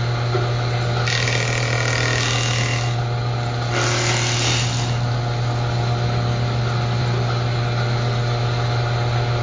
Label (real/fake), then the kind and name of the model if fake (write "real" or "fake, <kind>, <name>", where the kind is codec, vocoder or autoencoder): real